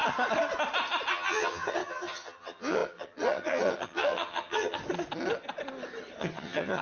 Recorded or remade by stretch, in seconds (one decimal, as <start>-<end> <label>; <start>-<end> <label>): 0.0-1.1 recorded; 1.1-4.8 remade; 4.8-6.2 recorded; 6.2-6.8 remade